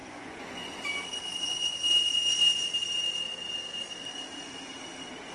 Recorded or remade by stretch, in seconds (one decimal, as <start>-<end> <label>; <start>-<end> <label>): 0.0-0.8 remade; 0.8-1.3 recorded; 1.3-1.8 remade; 1.8-5.3 recorded